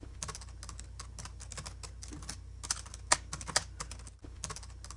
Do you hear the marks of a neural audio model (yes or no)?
no